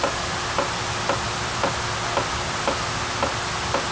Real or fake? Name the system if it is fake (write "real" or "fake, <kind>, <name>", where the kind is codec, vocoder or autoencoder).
real